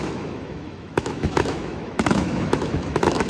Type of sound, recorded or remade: remade